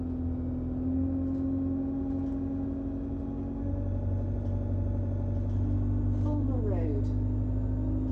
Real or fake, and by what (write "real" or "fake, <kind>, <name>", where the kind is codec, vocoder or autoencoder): real